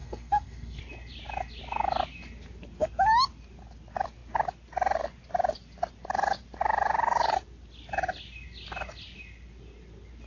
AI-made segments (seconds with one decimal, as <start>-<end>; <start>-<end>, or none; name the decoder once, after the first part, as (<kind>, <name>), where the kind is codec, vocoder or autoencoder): 0.0-0.8 (codec, SNAC)